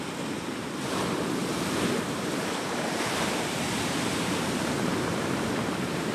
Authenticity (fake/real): fake